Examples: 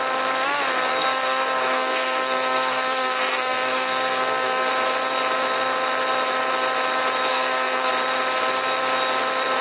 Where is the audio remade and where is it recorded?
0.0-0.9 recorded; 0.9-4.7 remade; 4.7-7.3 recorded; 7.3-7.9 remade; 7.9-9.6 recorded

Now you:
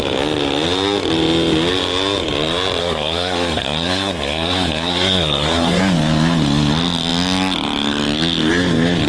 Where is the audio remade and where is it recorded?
0.0-2.8 recorded; 2.8-5.8 remade; 5.8-9.1 recorded

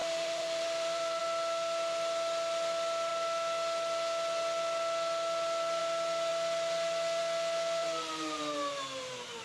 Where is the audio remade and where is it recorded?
0.0-1.2 remade; 1.2-7.8 recorded; 7.8-9.4 remade

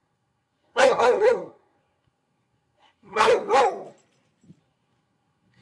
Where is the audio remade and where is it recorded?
0.0-3.3 remade; 3.3-4.6 recorded; 4.6-5.6 remade